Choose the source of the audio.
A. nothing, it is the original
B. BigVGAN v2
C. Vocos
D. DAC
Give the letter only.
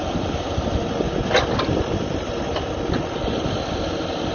A